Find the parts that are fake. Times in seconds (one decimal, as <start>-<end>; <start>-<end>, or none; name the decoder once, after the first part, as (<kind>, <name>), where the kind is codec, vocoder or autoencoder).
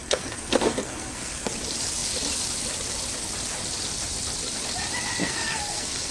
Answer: 0.0-1.5 (codec, SNAC); 5.2-6.1